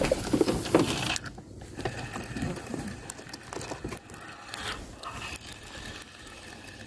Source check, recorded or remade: recorded